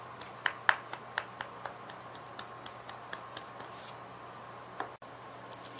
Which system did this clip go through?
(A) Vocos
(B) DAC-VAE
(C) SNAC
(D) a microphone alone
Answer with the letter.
D